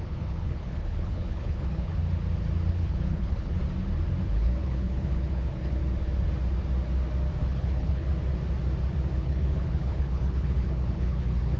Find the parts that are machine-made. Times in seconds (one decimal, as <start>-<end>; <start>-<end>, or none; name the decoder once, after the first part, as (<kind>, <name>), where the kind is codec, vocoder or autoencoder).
0.0-2.0 (codec, HILCodec); 2.7-3.6; 4.2-5.8; 7.4-8.1; 9.2-11.6